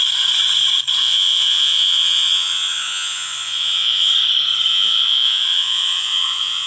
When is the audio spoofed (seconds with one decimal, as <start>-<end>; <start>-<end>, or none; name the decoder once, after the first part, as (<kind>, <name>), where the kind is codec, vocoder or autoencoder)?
1.0-4.1 (vocoder, Vocos); 4.7-6.7